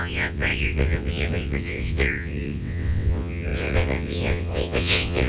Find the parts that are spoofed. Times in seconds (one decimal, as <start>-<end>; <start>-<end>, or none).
0.0-5.3